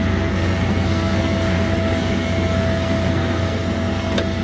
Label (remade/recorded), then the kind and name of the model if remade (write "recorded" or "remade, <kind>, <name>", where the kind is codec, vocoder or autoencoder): remade, codec, SNAC